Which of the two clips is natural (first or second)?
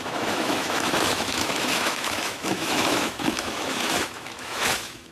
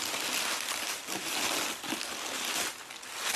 second